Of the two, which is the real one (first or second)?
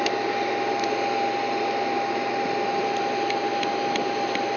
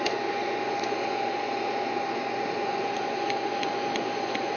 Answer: first